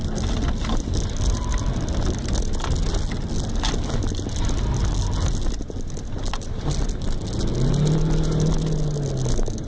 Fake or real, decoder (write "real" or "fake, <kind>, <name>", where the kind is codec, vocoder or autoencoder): real